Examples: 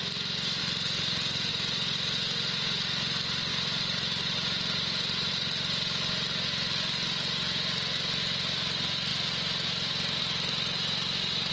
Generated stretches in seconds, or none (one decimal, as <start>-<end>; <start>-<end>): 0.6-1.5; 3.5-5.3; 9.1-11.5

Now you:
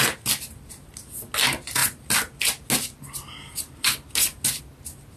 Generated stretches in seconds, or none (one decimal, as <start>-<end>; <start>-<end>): none

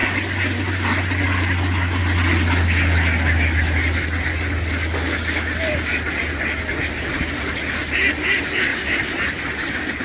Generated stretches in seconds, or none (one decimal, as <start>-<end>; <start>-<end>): 8.7-9.5

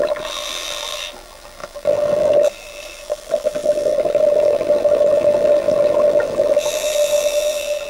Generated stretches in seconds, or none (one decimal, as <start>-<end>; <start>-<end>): 0.0-7.9

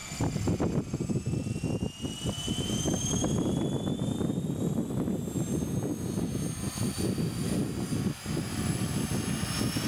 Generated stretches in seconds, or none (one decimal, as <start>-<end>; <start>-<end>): 0.0-0.8

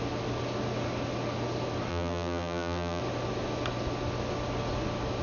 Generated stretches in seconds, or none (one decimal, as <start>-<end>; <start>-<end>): 1.9-3.0